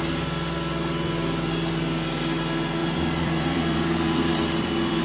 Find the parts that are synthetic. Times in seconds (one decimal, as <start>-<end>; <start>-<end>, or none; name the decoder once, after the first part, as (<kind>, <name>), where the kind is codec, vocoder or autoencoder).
2.8-5.0 (vocoder, BigVGAN v2)